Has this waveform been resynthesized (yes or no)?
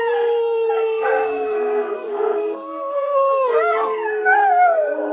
yes